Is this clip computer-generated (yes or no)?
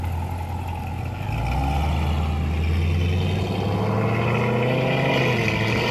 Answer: no